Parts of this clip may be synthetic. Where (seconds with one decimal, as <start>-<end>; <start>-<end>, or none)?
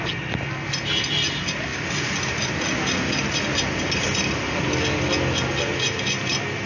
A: none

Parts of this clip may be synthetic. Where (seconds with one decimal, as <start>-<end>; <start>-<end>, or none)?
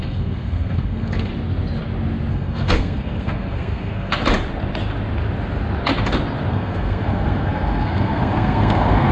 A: 0.0-1.3; 2.3-4.1; 6.5-9.1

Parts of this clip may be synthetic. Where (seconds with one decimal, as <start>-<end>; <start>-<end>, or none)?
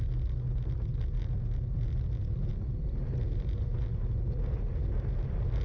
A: none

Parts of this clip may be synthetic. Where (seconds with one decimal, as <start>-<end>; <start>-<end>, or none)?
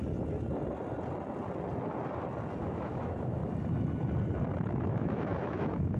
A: 2.6-3.4; 4.8-6.0